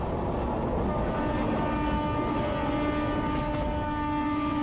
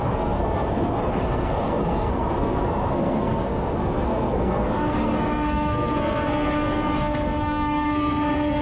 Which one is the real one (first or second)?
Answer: first